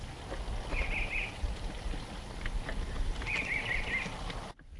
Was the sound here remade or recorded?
recorded